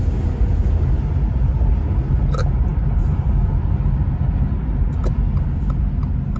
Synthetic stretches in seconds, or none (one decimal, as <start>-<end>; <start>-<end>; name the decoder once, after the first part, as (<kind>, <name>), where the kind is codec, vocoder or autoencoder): none